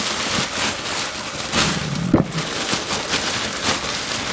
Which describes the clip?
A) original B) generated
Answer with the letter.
A